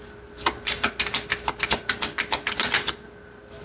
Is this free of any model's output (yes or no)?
yes